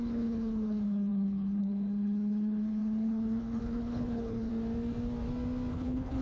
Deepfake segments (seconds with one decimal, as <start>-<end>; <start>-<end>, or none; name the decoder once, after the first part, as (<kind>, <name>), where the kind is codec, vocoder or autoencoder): 0.0-4.5 (codec, HILCodec); 5.7-6.2